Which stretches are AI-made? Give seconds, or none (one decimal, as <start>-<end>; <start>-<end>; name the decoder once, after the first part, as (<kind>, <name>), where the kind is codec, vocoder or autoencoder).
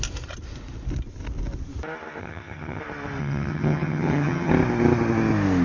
2.2-2.8 (vocoder, HiFi-GAN); 3.2-4.5